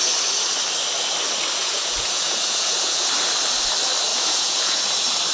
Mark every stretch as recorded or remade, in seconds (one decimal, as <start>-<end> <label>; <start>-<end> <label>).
0.0-1.6 recorded; 1.6-3.1 remade; 3.1-4.1 recorded; 4.1-4.8 remade; 4.8-5.3 recorded